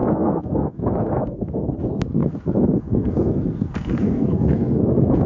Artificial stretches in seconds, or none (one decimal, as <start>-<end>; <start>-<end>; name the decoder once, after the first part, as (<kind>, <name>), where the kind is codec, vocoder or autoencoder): 0.0-1.7 (codec, SNAC); 2.2-5.3